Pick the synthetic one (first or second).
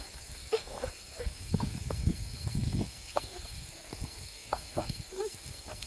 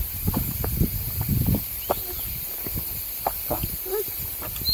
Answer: first